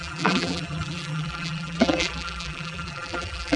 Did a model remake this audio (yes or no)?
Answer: yes